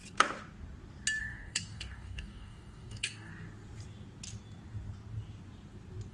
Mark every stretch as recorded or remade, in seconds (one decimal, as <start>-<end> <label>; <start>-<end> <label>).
0.0-1.2 recorded; 1.2-3.3 remade; 3.3-6.1 recorded